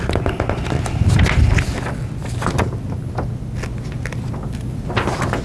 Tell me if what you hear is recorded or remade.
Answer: recorded